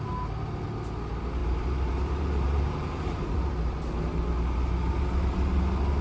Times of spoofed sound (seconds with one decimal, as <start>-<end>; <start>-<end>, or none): 1.4-3.5